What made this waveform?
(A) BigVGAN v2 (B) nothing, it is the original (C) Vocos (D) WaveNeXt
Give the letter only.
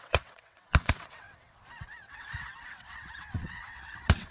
D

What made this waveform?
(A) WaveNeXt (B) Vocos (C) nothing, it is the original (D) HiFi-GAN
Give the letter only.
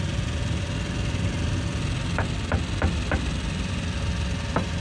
C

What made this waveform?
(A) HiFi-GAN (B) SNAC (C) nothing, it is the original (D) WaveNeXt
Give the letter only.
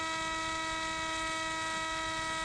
C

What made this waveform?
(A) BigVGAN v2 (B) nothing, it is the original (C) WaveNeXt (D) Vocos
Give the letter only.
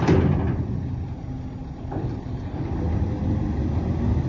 B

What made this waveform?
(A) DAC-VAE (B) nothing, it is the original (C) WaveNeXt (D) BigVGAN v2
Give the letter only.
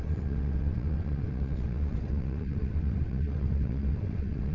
C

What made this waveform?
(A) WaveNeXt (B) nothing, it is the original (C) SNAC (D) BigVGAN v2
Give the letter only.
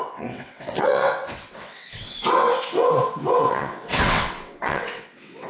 A